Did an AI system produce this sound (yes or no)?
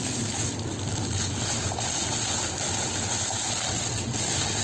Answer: no